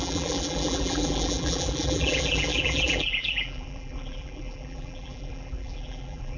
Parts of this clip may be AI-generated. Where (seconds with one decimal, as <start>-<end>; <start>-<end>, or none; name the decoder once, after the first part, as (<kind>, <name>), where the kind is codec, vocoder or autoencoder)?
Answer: 0.0-6.4 (vocoder, BigVGAN v2)

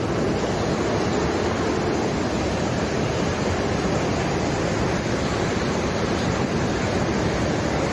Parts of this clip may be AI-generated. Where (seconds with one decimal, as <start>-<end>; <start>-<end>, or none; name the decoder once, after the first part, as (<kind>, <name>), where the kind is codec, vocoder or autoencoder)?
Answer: none